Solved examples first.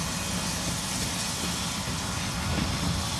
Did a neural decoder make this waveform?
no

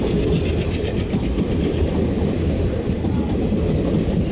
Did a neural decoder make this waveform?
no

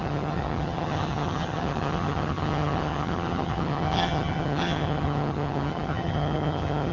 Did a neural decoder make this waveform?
yes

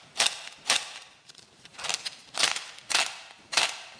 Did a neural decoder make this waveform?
yes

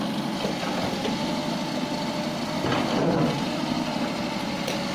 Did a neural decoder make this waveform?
no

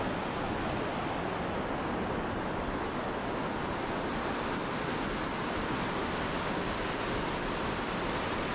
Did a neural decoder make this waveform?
no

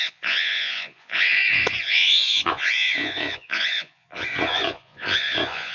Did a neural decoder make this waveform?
yes